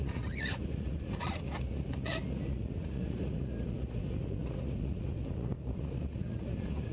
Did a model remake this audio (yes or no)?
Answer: yes